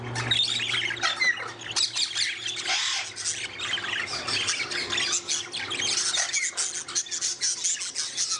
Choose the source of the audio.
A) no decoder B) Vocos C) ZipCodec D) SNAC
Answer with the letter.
A